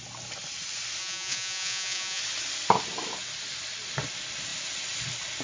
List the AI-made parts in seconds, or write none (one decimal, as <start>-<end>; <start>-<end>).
1.0-2.2